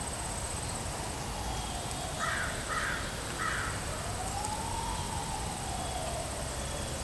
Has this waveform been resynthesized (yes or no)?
no